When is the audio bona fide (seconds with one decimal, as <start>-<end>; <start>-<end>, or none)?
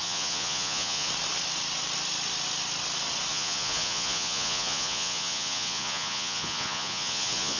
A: 1.1-3.3